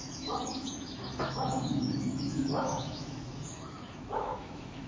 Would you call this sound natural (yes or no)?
no